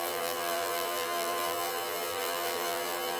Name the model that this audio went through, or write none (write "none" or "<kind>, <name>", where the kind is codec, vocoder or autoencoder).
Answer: vocoder, BigVGAN v2